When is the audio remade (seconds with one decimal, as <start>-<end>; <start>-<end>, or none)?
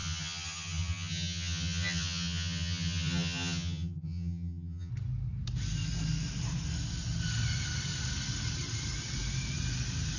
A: 0.0-4.9